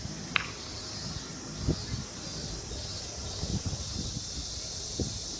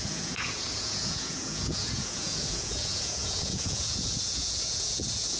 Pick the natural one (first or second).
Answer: first